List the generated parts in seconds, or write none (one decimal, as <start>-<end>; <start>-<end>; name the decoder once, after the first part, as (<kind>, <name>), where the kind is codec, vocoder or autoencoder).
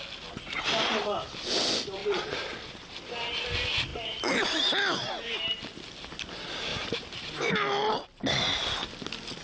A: 2.0-3.0 (vocoder, BigVGAN v2); 6.7-7.5